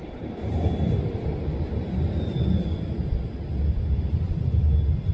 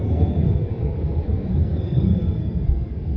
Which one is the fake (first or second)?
second